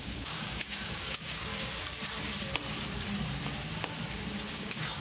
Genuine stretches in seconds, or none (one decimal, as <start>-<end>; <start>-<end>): 1.5-4.5